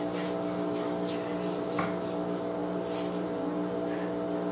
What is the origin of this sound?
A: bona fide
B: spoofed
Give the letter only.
A